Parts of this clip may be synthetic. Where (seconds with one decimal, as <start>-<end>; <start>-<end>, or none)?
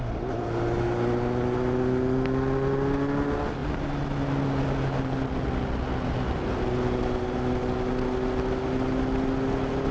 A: none